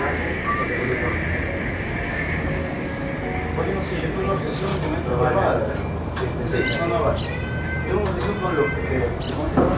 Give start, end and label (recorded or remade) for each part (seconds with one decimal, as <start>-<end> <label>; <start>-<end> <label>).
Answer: 0.0-1.0 remade; 1.0-2.1 recorded; 2.1-2.9 remade; 2.9-3.6 recorded; 3.6-4.7 remade; 4.7-9.3 recorded; 9.3-9.8 remade

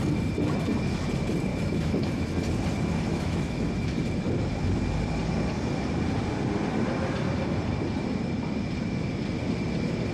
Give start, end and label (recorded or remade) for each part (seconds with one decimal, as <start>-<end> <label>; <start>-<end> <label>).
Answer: 0.0-1.5 recorded; 1.5-2.3 remade; 2.3-3.1 recorded; 3.1-3.9 remade; 3.9-10.1 recorded

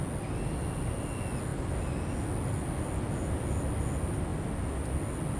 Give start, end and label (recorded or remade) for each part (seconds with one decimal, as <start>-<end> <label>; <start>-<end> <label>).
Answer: 0.0-5.4 recorded

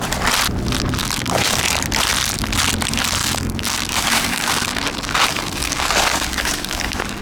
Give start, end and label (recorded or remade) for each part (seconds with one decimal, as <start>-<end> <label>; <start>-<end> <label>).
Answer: 0.0-1.0 recorded; 1.0-1.6 remade; 1.6-3.2 recorded; 3.2-7.2 remade

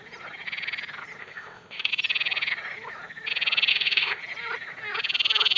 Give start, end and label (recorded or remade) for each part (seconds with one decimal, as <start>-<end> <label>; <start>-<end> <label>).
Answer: 0.0-1.2 recorded; 1.2-1.9 remade; 1.9-3.7 recorded; 3.7-4.2 remade; 4.2-5.6 recorded

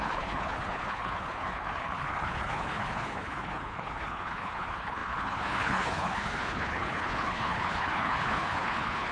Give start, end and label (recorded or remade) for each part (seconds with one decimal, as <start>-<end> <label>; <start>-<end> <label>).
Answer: 0.0-9.1 remade

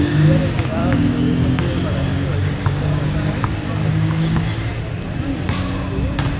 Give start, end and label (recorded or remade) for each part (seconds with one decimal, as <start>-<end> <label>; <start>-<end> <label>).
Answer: 0.0-0.8 recorded; 0.8-1.6 remade; 1.6-2.1 recorded; 2.1-3.3 remade; 3.3-3.9 recorded; 3.9-4.4 remade; 4.4-6.4 recorded

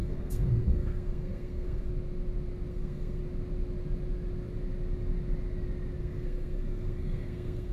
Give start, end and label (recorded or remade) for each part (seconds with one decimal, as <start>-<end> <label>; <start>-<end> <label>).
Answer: 0.0-1.9 remade; 1.9-2.7 recorded; 2.7-3.2 remade; 3.2-6.0 recorded; 6.0-7.7 remade